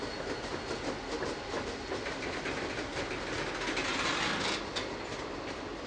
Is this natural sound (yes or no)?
yes